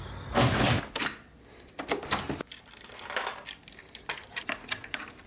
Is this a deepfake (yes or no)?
no